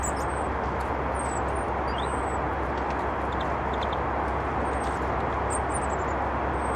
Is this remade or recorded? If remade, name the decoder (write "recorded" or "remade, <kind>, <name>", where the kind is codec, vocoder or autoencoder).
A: recorded